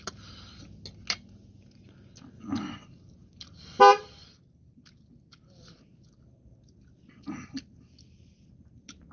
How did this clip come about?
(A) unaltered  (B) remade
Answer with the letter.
A